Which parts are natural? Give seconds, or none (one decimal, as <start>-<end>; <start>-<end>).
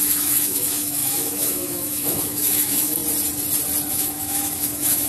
3.0-3.9